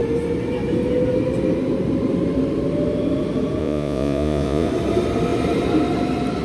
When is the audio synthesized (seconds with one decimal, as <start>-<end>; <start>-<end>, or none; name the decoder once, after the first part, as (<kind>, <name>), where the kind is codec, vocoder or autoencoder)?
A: 3.6-4.7 (vocoder, Vocos)